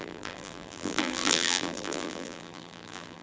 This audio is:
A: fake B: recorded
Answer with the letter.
A